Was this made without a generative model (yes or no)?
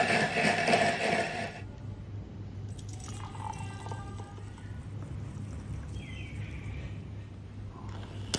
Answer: yes